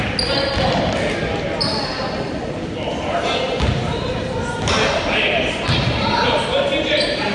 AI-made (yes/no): no